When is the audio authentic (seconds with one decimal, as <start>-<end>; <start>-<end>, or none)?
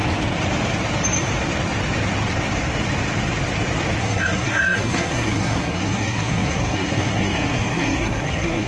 0.0-4.0